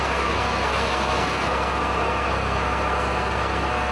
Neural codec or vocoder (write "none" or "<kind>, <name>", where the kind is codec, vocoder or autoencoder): codec, SNAC